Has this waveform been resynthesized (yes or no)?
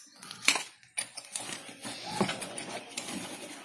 yes